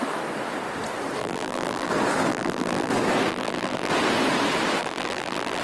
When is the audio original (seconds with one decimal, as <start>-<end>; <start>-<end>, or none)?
0.0-1.2; 1.9-2.3; 2.9-3.3; 3.9-4.8